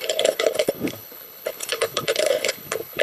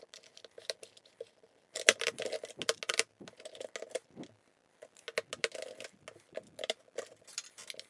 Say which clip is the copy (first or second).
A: first